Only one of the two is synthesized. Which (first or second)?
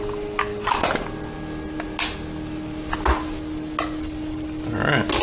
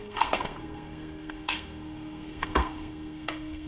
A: second